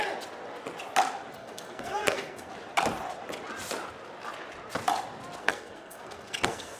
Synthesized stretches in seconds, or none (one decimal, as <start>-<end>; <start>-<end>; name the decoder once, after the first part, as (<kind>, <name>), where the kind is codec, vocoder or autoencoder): 1.4-2.5 (codec, SNAC); 5.4-6.8